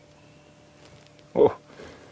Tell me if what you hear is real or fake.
real